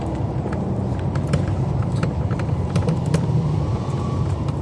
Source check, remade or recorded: remade